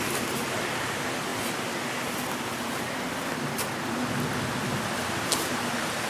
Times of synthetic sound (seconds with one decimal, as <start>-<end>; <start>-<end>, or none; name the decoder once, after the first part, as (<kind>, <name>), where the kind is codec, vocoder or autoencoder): none

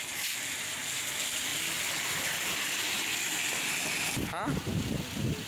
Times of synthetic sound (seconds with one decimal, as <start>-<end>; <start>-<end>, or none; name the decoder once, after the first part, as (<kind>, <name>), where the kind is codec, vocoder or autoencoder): none

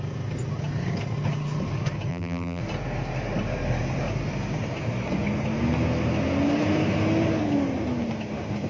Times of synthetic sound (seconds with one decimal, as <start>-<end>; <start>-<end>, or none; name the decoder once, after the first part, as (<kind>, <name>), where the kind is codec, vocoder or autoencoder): 2.1-2.6 (vocoder, BigVGAN v2)

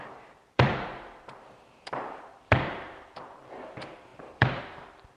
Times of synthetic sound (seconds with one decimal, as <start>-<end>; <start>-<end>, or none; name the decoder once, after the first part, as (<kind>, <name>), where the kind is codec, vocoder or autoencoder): 0.0-5.2 (vocoder, BigVGAN v2)

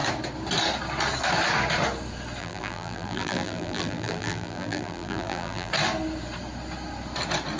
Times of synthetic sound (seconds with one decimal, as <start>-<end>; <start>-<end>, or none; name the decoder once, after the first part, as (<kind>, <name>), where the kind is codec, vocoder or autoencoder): 2.4-5.7 (vocoder, BigVGAN v2)

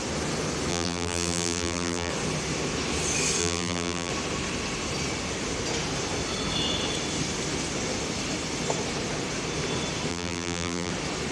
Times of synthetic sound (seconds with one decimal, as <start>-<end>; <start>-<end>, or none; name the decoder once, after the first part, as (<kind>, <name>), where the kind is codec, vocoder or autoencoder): 0.7-2.1 (vocoder, BigVGAN v2); 3.4-4.1; 10.1-10.9

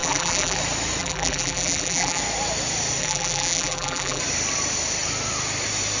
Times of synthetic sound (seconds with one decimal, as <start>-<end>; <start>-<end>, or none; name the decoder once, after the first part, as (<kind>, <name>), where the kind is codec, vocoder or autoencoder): 0.0-0.6 (vocoder, BigVGAN v2); 1.0-2.2; 3.0-4.2

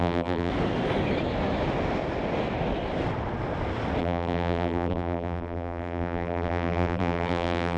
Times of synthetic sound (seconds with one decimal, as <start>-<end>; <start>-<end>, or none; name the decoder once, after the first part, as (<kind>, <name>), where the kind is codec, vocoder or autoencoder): 0.0-0.5 (vocoder, BigVGAN v2); 4.0-7.8